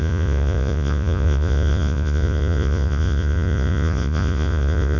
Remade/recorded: remade